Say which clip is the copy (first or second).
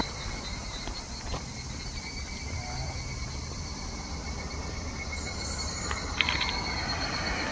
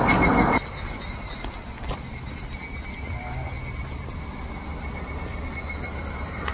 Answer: first